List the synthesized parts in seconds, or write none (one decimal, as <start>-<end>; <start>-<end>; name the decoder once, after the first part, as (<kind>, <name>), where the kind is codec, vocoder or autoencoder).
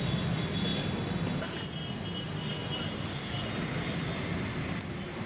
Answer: none